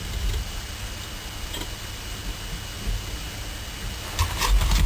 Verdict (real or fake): real